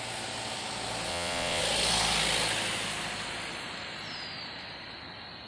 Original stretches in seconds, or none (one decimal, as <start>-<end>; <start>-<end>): 0.0-1.1; 1.6-5.5